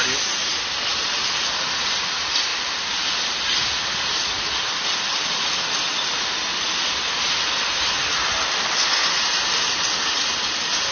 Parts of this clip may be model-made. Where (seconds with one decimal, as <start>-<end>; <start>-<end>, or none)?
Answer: none